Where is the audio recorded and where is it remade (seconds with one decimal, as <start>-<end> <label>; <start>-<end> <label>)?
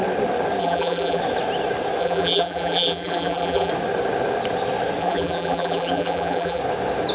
0.0-0.6 recorded; 0.6-1.2 remade; 1.2-2.0 recorded; 2.0-3.7 remade; 3.7-5.0 recorded; 5.0-6.6 remade; 6.6-7.1 recorded